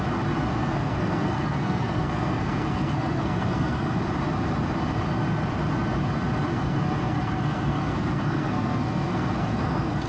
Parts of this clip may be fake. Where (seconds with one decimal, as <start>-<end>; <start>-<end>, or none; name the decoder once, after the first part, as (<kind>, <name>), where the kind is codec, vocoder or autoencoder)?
0.5-4.0 (codec, SNAC); 6.5-10.1